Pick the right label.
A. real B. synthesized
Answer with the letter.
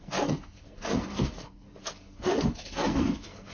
B